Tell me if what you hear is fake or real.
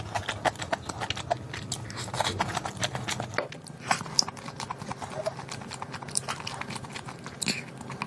real